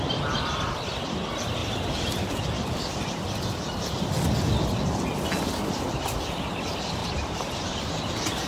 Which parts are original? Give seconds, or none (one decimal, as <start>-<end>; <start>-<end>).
0.0-1.6; 2.3-7.0